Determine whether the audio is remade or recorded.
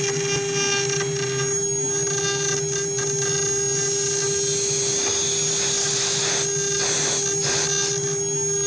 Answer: recorded